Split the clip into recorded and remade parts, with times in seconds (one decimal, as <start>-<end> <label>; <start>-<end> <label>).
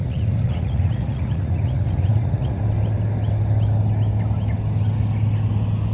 0.0-2.6 remade; 2.6-5.9 recorded